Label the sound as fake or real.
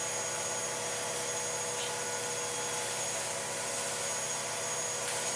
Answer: real